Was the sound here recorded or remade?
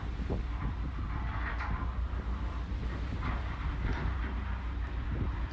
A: recorded